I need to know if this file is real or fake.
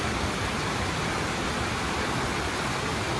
real